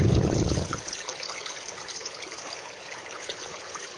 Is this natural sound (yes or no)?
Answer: no